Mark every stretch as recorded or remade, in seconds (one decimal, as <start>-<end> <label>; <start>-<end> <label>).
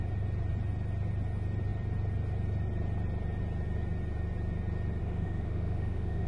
0.0-5.0 recorded; 5.0-6.3 remade